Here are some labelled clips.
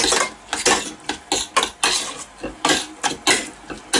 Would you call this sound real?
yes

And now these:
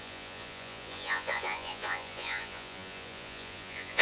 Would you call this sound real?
no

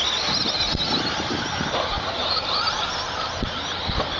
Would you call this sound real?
yes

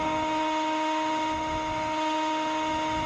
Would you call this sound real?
no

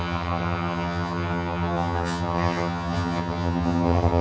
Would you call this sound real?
no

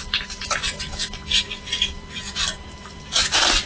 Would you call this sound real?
no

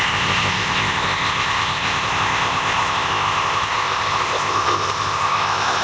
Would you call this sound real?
no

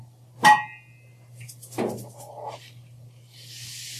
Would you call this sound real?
yes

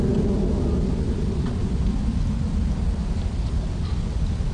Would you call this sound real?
yes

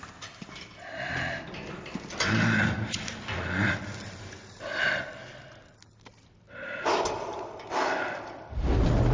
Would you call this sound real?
yes